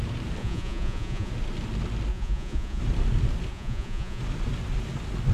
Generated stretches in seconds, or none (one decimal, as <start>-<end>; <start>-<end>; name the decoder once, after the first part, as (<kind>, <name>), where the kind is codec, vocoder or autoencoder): 0.4-1.3 (vocoder, Vocos); 2.1-2.8; 3.5-4.2